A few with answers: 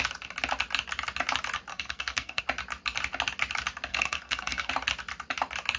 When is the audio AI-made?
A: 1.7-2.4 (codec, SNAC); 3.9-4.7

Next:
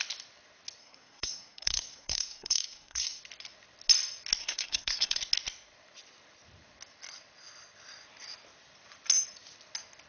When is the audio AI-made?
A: 0.8-3.2 (codec, SNAC); 4.4-5.2

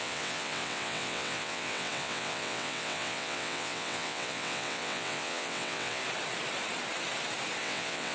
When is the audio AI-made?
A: 0.0-6.0 (vocoder, WaveNeXt); 7.6-8.1

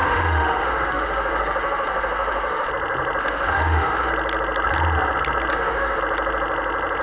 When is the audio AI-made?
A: 0.0-2.7 (autoencoder, DAC-VAE); 3.2-4.1; 5.5-6.0